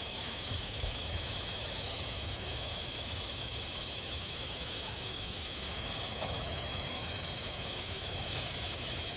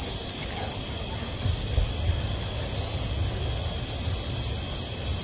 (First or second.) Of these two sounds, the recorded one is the second